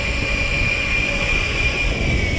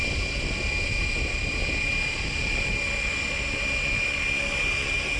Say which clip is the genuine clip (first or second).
second